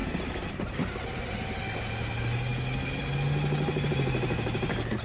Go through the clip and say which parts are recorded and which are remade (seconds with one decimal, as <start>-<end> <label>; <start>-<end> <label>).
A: 0.0-5.0 recorded